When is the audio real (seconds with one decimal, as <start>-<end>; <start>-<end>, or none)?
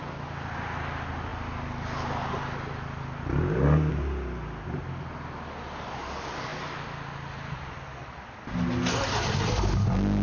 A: 0.0-10.2